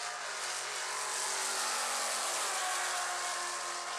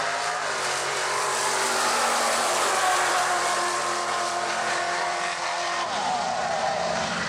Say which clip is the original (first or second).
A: first